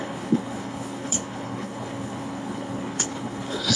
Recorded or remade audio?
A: remade